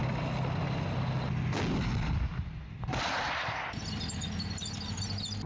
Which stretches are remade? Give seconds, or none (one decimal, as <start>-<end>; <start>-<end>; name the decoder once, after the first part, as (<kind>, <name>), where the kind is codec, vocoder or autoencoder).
none